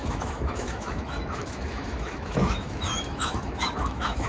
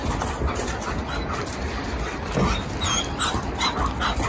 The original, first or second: second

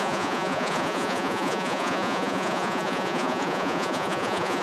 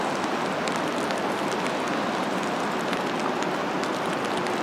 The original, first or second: second